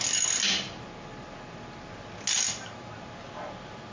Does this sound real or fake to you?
real